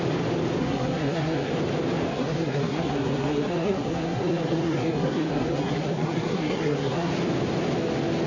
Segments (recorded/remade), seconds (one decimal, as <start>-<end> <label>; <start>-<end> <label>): 0.0-0.6 recorded; 0.6-1.5 remade; 1.5-2.1 recorded; 2.1-7.1 remade; 7.1-8.3 recorded